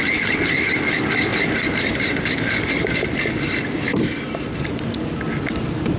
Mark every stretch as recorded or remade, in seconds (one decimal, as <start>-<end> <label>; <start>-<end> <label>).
0.0-1.3 recorded; 1.3-4.9 remade; 4.9-6.0 recorded